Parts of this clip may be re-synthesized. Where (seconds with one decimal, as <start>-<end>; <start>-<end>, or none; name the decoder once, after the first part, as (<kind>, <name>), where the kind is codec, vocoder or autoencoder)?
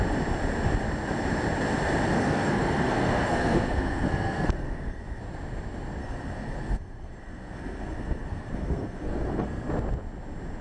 2.1-5.2 (codec, SNAC); 6.0-9.7